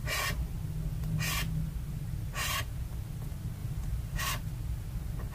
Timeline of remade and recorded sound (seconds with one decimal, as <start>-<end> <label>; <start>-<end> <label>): 0.0-5.3 recorded